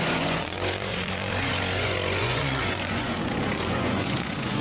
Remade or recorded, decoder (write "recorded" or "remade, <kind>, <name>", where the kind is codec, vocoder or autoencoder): remade, vocoder, Vocos